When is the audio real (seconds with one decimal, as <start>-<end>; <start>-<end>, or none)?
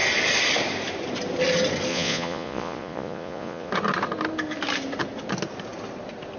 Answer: 0.0-1.9; 3.7-6.4